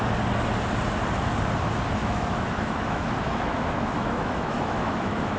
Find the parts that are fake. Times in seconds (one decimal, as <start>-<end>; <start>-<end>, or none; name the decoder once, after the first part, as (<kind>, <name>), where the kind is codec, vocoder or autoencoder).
2.0-5.4 (autoencoder, DAC-VAE)